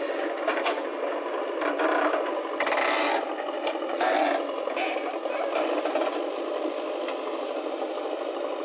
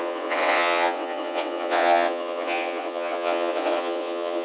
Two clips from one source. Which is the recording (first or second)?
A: first